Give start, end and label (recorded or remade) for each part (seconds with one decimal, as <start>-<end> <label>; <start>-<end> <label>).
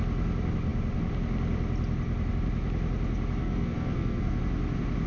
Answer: 0.0-3.4 recorded; 3.4-4.4 remade; 4.4-5.1 recorded